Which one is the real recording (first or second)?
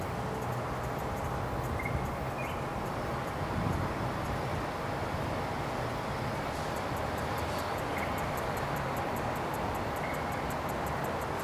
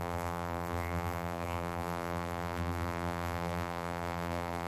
first